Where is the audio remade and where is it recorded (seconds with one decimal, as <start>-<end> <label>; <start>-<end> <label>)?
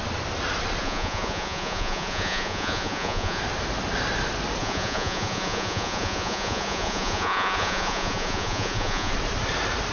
0.0-0.8 recorded; 0.8-3.4 remade; 3.4-4.6 recorded; 4.6-9.1 remade; 9.1-9.9 recorded